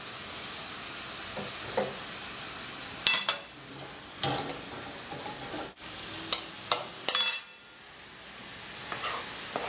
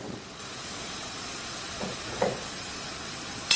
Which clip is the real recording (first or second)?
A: first